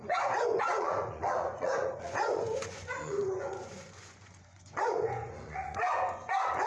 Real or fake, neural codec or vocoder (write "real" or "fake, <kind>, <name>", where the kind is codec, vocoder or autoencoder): fake, vocoder, Vocos